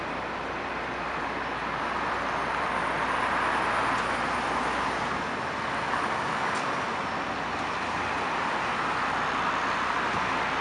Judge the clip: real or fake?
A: real